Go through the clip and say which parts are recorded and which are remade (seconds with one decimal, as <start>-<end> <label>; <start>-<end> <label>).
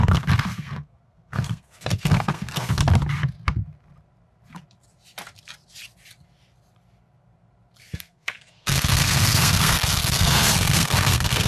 0.0-2.8 remade; 2.8-7.8 recorded; 7.8-11.5 remade